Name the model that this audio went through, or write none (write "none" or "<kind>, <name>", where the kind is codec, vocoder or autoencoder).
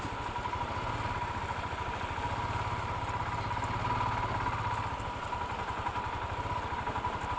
none